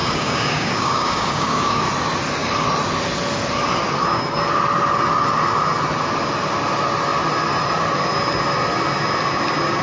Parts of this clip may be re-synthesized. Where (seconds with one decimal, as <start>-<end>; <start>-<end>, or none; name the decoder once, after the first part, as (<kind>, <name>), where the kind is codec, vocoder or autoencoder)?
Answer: 0.0-1.8 (codec, DAC)